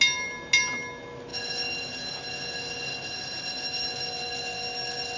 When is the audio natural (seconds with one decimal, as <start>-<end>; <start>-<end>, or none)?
0.0-5.2